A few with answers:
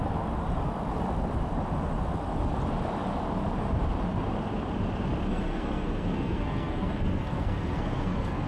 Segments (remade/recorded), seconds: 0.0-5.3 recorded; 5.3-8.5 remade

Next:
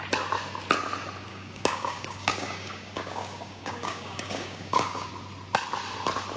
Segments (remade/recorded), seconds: 0.0-1.3 recorded; 1.3-5.1 remade; 5.1-6.4 recorded

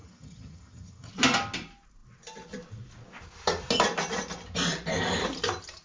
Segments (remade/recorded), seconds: 0.0-1.1 remade; 1.1-5.8 recorded